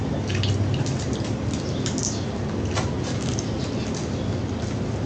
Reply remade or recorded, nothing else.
recorded